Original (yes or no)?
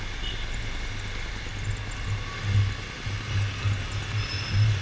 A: yes